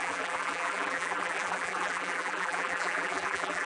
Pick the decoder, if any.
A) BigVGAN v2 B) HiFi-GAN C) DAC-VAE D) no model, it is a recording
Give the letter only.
A